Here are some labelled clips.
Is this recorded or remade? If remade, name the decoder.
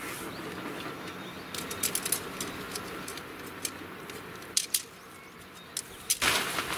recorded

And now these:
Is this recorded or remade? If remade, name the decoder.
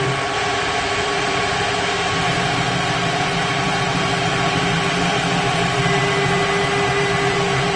remade, vocoder, BigVGAN v2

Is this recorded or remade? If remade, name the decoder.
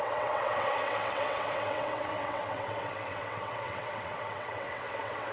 remade, vocoder, WaveNeXt